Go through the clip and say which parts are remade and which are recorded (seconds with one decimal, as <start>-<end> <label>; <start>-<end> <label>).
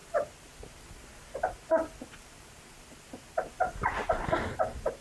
0.0-5.0 recorded